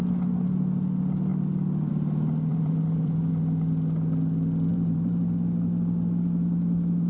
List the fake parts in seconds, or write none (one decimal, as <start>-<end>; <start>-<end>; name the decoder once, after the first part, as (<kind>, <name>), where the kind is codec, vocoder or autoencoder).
2.5-3.3 (vocoder, BigVGAN v2); 4.7-7.1